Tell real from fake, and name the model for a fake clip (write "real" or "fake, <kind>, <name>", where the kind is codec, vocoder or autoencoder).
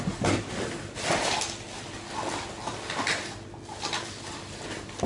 real